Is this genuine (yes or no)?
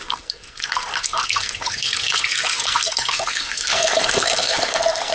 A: no